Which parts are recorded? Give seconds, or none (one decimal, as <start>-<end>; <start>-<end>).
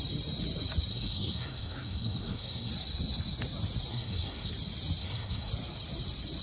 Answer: 0.0-0.9; 2.7-3.9; 4.5-5.0; 5.5-6.4